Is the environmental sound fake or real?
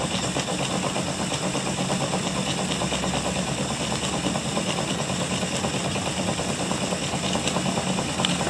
real